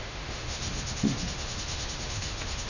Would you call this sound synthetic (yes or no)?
yes